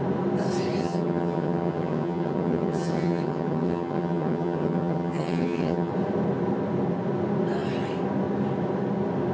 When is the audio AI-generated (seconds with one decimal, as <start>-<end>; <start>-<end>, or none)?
0.8-5.9